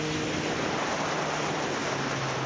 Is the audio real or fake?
real